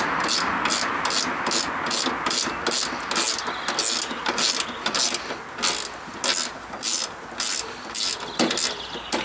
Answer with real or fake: real